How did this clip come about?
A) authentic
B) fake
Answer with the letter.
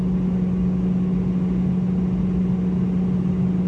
A